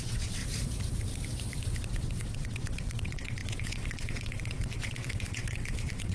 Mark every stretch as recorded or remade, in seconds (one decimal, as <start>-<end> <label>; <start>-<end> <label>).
0.0-0.4 remade; 0.4-1.8 recorded; 1.8-6.1 remade